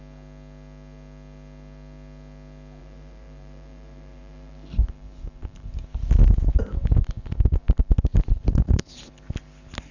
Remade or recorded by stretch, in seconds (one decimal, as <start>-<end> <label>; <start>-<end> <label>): 0.0-2.8 recorded; 2.8-5.7 remade; 5.7-7.8 recorded; 7.8-8.8 remade; 8.8-9.9 recorded